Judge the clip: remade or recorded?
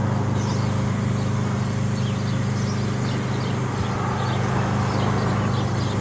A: recorded